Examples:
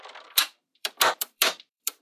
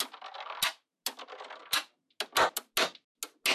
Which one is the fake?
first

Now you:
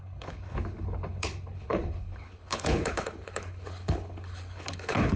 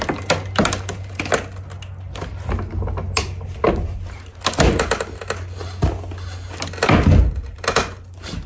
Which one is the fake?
first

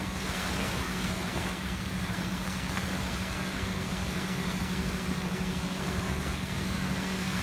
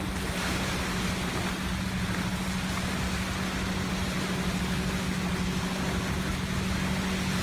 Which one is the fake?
first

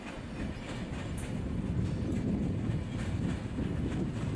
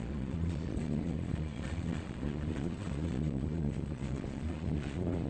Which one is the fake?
second